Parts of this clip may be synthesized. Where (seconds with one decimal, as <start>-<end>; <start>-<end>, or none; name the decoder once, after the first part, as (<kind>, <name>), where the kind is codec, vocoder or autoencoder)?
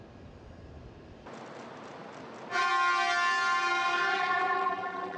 4.1-5.2 (vocoder, BigVGAN v2)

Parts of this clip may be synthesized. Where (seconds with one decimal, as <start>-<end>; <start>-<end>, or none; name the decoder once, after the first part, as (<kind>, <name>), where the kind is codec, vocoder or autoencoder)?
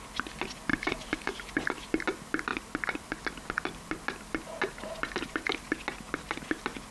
0.7-1.8 (vocoder, BigVGAN v2)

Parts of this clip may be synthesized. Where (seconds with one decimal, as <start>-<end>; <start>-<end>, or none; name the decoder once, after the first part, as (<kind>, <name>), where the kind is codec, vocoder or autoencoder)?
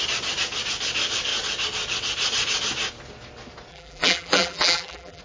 3.7-5.2 (vocoder, BigVGAN v2)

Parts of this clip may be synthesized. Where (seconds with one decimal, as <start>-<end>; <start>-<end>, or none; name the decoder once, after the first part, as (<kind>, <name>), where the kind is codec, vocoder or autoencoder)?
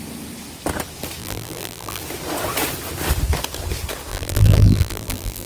1.2-2.0 (vocoder, BigVGAN v2); 4.1-5.5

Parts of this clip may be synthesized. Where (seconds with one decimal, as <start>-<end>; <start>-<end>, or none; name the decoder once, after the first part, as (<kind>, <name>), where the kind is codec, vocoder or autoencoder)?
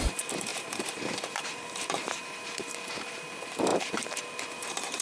0.0-5.0 (vocoder, BigVGAN v2)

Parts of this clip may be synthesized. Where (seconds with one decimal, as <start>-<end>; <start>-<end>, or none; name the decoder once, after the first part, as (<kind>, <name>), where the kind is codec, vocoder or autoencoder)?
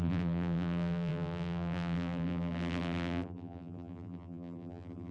0.0-5.1 (vocoder, BigVGAN v2)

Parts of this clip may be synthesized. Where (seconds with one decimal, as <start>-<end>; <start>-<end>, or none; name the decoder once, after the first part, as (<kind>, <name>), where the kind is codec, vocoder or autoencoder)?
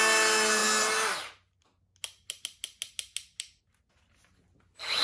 none